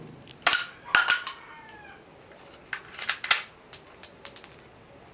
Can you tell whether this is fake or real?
real